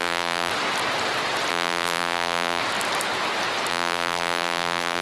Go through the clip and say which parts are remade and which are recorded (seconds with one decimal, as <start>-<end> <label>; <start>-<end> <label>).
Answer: 0.0-0.5 remade; 0.5-1.5 recorded; 1.5-2.6 remade; 2.6-3.7 recorded; 3.7-5.0 remade